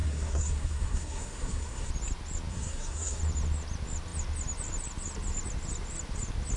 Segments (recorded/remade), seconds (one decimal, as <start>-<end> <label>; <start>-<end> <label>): 0.0-1.9 remade; 1.9-2.5 recorded; 2.5-3.2 remade; 3.2-6.6 recorded